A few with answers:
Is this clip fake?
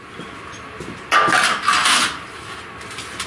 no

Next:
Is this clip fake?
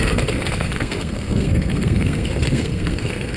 yes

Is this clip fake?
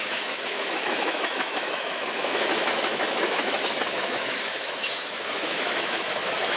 yes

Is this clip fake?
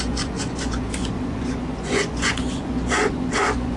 yes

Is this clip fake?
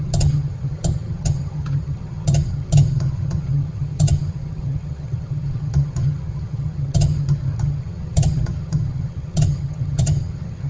yes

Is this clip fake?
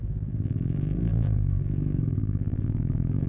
yes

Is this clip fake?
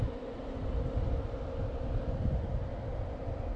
no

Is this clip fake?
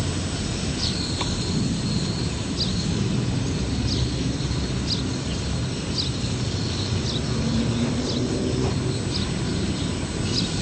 no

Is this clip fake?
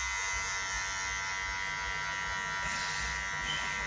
no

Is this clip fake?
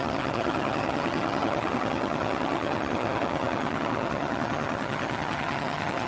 yes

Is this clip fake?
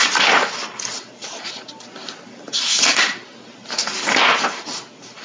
no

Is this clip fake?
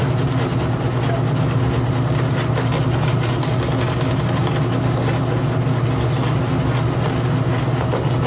no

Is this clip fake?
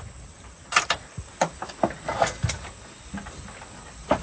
no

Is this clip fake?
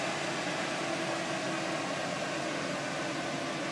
no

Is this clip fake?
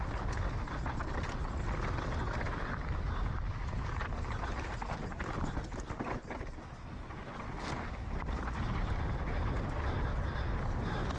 no